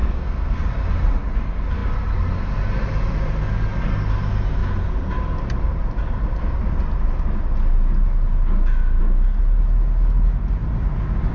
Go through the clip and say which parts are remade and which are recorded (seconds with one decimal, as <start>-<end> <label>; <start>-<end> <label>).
0.0-0.6 remade; 0.6-11.3 recorded

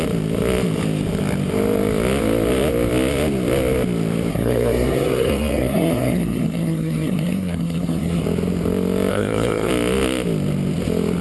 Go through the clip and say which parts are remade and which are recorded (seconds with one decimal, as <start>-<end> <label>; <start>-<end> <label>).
0.0-4.3 recorded; 4.3-8.2 remade; 8.2-9.1 recorded; 9.1-9.7 remade; 9.7-11.2 recorded

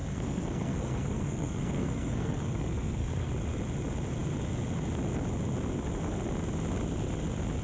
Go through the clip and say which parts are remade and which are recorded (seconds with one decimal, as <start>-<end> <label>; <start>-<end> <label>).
0.0-3.3 remade; 3.3-7.6 recorded

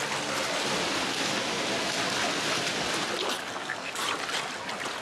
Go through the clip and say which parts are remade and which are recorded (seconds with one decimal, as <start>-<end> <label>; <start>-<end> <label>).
0.0-3.4 recorded; 3.4-3.9 remade; 3.9-5.0 recorded

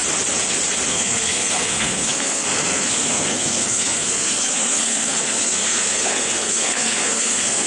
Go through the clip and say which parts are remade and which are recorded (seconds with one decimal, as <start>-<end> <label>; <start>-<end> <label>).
0.0-0.9 recorded; 0.9-7.7 remade

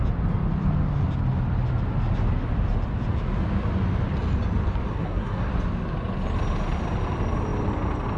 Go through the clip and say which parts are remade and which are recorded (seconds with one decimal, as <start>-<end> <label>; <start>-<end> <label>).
0.0-4.9 recorded; 4.9-5.5 remade; 5.5-8.2 recorded

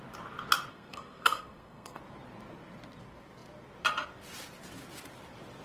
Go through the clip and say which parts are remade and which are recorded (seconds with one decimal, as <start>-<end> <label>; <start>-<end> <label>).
0.0-0.7 recorded; 0.7-2.0 remade; 2.0-5.6 recorded

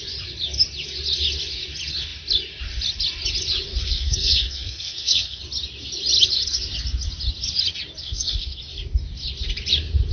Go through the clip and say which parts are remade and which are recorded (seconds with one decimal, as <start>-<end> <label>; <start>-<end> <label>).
0.0-3.7 recorded; 3.7-5.4 remade; 5.4-8.0 recorded; 8.0-8.6 remade; 8.6-10.1 recorded